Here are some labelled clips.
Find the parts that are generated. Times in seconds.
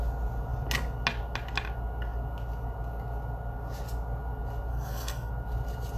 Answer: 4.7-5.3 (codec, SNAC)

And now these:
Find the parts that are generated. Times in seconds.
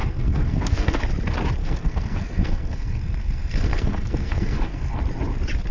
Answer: 0.0-1.0 (codec, SNAC); 1.6-5.0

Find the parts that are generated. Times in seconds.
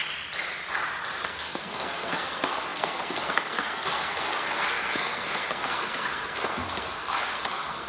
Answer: 1.2-7.9 (codec, SNAC)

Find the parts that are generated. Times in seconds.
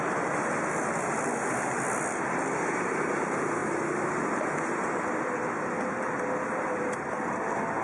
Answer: none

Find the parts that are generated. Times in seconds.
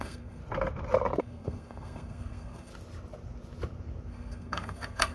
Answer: 0.0-0.4 (codec, SNAC); 1.2-2.7; 4.1-5.1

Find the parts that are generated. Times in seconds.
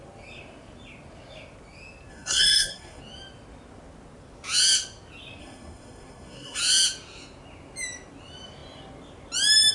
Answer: 2.1-3.0 (codec, SNAC); 5.4-6.6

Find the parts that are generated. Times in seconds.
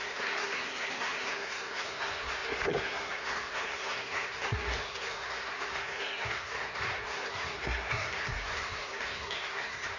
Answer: 0.0-10.0 (codec, SNAC)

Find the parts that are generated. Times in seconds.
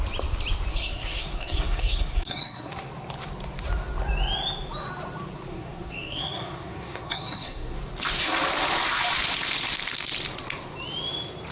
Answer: 0.7-2.7 (codec, SNAC); 5.5-7.8